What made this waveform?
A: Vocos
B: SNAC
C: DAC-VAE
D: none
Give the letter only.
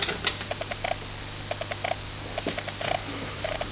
D